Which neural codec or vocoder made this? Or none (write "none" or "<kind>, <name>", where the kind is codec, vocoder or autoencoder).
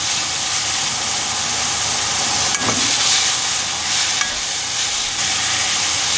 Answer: none